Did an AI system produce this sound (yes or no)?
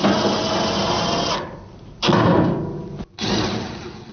no